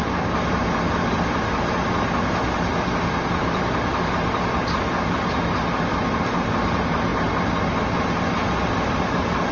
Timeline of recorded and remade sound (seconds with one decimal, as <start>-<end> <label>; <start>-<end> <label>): 0.0-9.5 remade

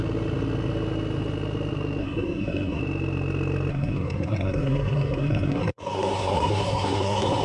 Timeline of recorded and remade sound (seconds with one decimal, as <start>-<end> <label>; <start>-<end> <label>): 0.0-2.0 recorded; 2.0-2.8 remade; 2.8-3.7 recorded; 3.7-7.4 remade

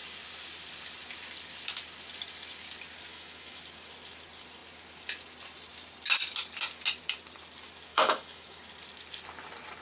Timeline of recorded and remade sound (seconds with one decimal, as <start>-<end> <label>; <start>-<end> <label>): 0.0-3.1 recorded; 3.1-3.6 remade; 3.6-7.9 recorded; 7.9-8.6 remade; 8.6-9.8 recorded

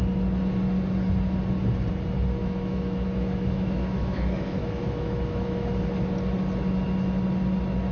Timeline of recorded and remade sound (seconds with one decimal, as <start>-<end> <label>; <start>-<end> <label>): 0.0-2.4 recorded; 2.4-5.7 remade; 5.7-7.9 recorded

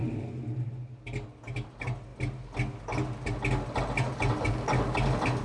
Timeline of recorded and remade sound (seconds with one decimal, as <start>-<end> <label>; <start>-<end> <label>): 0.0-5.4 recorded

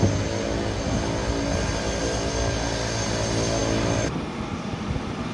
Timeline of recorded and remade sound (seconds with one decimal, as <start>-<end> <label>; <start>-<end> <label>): 0.0-5.3 recorded